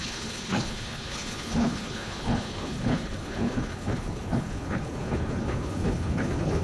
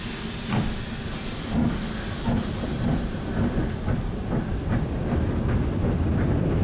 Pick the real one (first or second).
second